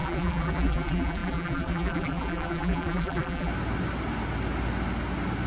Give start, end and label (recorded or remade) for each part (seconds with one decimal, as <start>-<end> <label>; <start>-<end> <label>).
0.0-3.5 remade; 3.5-5.5 recorded